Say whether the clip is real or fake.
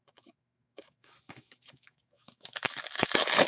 fake